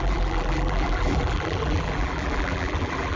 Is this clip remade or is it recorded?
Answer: remade